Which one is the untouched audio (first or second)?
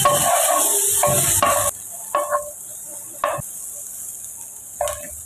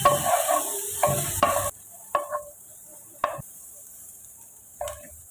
first